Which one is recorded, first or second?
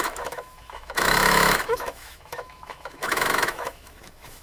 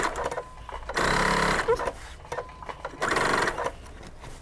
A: second